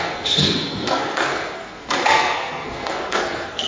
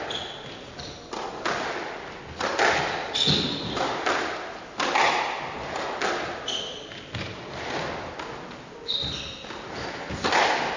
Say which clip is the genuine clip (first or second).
second